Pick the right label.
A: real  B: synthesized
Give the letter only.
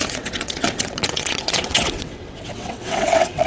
B